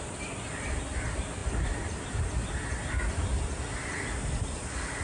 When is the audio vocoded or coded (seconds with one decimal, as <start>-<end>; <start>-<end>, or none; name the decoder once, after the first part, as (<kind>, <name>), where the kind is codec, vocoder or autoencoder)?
none

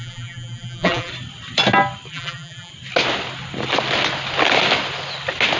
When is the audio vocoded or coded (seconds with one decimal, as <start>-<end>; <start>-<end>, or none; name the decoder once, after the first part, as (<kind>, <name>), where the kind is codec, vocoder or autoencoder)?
0.0-1.1 (vocoder, BigVGAN v2); 2.1-2.7

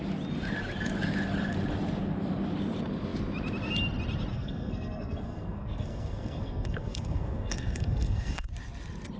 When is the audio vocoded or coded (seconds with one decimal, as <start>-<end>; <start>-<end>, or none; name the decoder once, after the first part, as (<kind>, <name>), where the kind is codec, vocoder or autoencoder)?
4.3-8.5 (codec, SNAC)

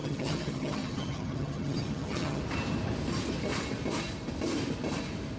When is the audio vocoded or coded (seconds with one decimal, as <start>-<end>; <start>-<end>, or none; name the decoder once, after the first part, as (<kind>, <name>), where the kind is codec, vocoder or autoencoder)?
0.0-2.4 (vocoder, HiFi-GAN)

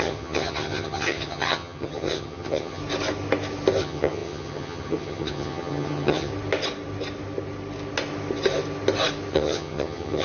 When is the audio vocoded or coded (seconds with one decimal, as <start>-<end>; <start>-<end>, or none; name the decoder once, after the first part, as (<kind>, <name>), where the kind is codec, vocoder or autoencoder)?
0.0-2.8 (vocoder, HiFi-GAN); 3.8-6.3; 9.3-10.2